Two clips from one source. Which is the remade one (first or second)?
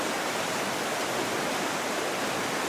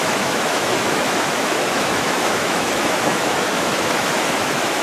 second